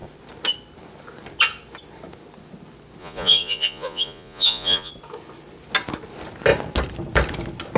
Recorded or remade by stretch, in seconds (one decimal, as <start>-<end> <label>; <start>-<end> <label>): 0.0-3.0 recorded; 3.0-4.9 remade; 4.9-7.8 recorded